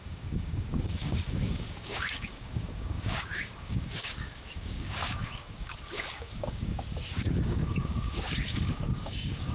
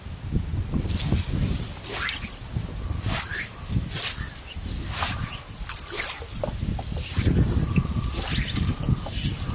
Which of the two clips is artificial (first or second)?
first